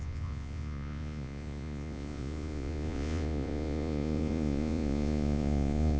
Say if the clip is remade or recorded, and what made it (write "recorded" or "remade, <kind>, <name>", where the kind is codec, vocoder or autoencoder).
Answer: remade, vocoder, Vocos